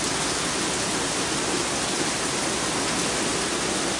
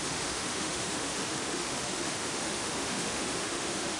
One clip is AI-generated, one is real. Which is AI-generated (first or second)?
second